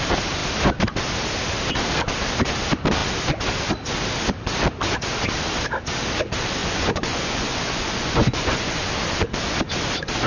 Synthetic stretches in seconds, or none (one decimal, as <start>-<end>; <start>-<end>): 6.6-8.9